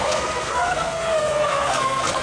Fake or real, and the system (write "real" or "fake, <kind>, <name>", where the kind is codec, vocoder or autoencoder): fake, codec, SNAC